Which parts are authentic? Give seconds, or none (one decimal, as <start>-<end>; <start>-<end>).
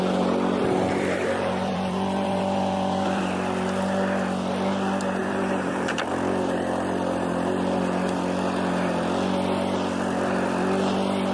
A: 0.0-0.6; 3.2-5.2; 6.1-11.3